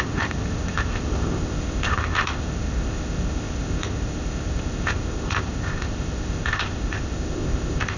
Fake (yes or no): yes